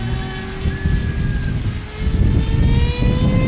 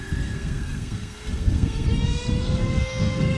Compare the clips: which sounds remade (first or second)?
second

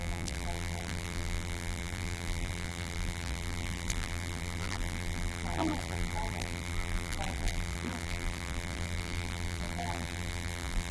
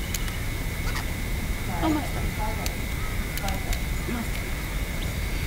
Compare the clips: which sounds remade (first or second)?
first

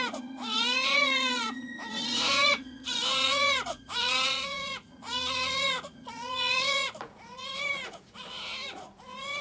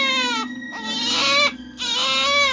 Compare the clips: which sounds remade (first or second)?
first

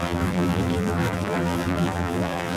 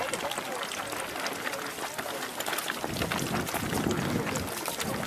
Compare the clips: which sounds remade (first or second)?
first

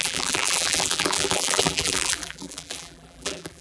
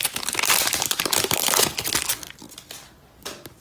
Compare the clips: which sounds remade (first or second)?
first